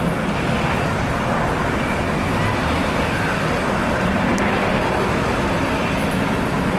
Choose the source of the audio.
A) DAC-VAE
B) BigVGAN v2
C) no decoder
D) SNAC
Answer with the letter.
C